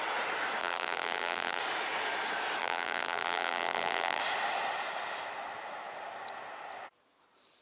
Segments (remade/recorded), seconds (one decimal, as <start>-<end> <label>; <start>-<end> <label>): 0.0-0.6 recorded; 0.6-1.6 remade; 1.6-2.6 recorded; 2.6-4.2 remade; 4.2-7.6 recorded